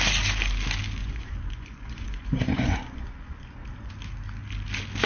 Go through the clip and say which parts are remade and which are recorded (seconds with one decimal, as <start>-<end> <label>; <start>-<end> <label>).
0.0-1.0 recorded; 1.0-3.9 remade; 3.9-5.1 recorded